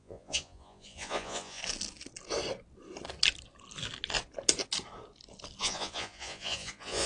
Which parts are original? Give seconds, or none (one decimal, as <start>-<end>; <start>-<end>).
1.6-5.6